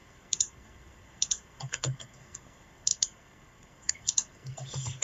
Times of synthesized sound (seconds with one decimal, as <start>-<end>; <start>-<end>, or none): 0.0-5.0